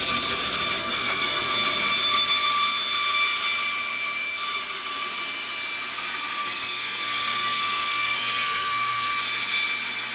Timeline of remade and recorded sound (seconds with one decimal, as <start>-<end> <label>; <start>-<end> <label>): 0.0-0.8 recorded; 0.8-1.4 remade; 1.4-6.4 recorded; 6.4-9.1 remade; 9.1-10.1 recorded